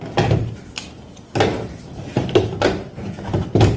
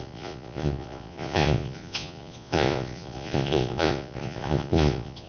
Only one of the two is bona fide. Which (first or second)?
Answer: first